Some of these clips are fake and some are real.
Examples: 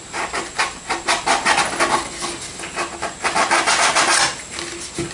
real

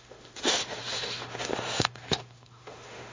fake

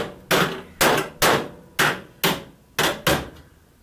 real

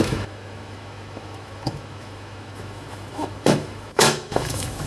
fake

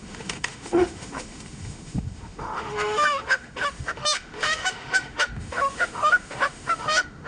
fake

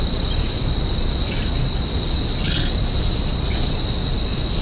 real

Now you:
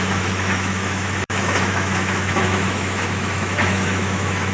fake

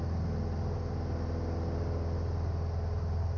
real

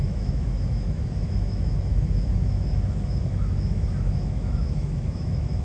fake